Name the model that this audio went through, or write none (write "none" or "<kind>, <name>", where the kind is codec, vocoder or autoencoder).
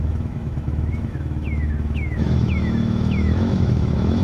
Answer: autoencoder, DAC-VAE